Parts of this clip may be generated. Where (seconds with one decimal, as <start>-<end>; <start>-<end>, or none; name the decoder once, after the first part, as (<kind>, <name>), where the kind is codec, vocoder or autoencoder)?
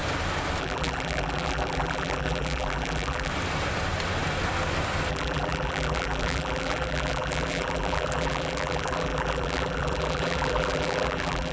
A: 0.6-3.3 (vocoder, BigVGAN v2); 5.1-11.5